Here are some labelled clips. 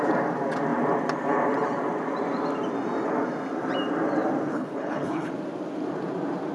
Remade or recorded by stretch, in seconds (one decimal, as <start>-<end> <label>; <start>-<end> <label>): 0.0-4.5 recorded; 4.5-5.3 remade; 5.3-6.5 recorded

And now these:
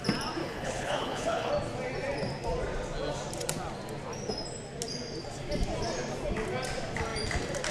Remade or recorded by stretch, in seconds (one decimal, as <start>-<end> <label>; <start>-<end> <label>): 0.0-0.4 recorded; 0.4-1.5 remade; 1.5-7.7 recorded

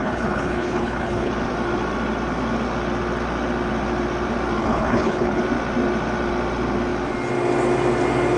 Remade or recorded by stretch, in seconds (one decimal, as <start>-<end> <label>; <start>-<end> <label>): 0.0-1.3 remade; 1.3-4.6 recorded; 4.6-5.4 remade; 5.4-8.4 recorded

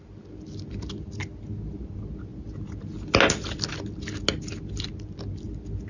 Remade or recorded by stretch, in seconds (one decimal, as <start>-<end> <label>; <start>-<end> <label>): 0.0-5.9 recorded